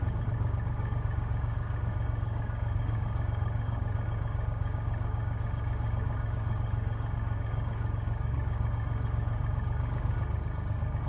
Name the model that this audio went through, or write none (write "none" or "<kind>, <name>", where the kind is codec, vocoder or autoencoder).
codec, DAC